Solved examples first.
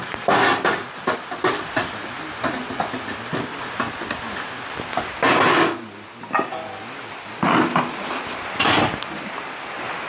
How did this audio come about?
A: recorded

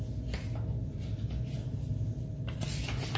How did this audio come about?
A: recorded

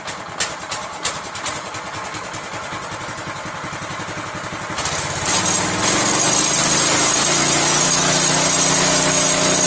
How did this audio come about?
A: recorded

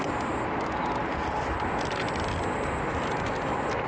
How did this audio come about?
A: recorded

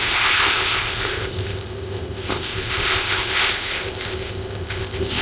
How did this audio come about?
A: remade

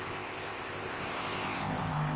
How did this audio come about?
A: remade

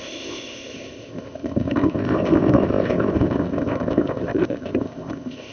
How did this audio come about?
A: remade